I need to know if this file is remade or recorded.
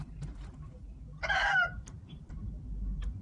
remade